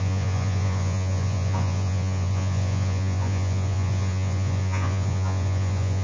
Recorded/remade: remade